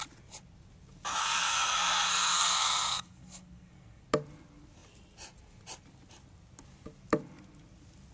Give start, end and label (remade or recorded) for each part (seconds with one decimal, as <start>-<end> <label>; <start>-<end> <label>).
0.0-1.2 recorded; 1.2-4.0 remade; 4.0-8.1 recorded